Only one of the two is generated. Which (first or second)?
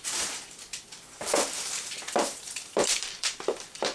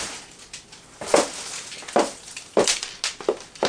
first